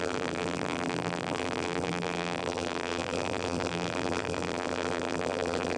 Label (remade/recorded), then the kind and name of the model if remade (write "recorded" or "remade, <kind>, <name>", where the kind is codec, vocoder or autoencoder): remade, vocoder, BigVGAN v2